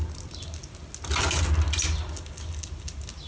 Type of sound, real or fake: real